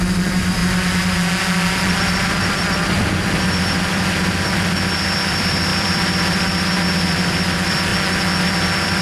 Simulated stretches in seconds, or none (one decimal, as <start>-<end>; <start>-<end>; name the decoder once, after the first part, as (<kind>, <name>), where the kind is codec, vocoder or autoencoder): 0.0-0.6 (vocoder, BigVGAN v2); 2.0-7.9; 8.4-9.0